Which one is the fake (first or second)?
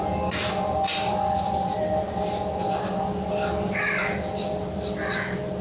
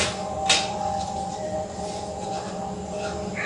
second